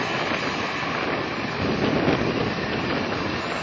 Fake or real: real